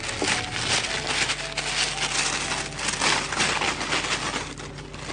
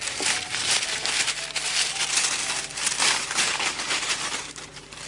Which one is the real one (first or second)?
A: first